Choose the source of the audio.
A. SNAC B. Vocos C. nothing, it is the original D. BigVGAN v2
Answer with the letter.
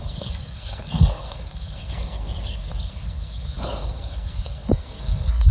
A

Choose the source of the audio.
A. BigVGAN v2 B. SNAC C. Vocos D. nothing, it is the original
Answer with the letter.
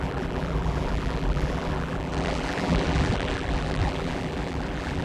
A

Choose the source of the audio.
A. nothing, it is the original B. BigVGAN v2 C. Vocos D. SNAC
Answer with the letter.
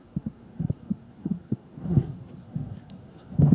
D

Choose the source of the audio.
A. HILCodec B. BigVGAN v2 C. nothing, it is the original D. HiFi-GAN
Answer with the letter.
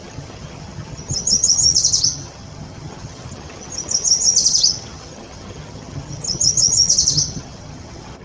D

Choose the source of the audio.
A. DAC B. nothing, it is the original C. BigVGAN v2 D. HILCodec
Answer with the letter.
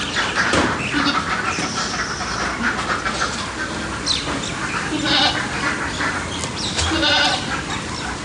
B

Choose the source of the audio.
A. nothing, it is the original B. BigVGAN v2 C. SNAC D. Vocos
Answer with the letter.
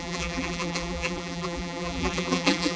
B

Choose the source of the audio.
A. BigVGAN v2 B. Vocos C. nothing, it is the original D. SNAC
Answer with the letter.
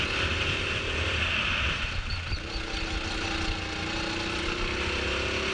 C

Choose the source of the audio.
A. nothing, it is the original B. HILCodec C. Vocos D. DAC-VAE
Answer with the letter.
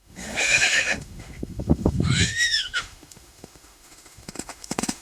D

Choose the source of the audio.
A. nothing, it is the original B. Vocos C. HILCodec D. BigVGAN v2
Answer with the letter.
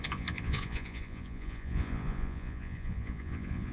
B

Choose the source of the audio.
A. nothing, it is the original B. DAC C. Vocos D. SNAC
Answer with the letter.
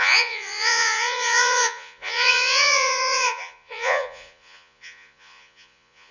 C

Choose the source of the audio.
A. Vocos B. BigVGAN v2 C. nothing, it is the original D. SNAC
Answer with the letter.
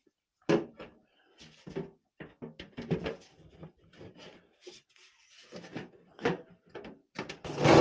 C